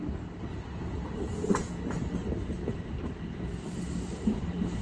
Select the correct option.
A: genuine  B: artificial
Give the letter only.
A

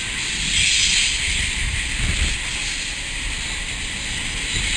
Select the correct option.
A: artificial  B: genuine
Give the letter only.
B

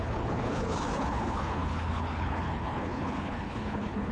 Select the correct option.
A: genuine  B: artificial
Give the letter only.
B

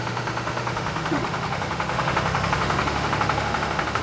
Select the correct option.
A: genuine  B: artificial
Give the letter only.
B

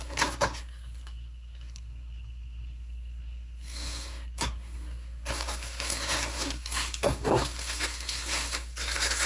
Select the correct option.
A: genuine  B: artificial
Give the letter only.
B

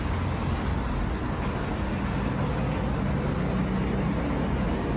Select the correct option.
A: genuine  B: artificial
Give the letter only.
A